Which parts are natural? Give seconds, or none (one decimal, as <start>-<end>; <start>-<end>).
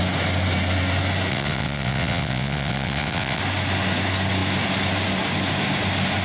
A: 0.0-1.3; 3.4-6.2